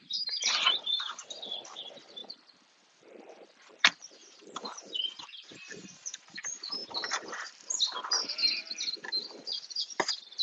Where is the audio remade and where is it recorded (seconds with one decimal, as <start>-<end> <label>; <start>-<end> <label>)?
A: 0.0-10.4 remade